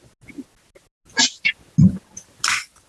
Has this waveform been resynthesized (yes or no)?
no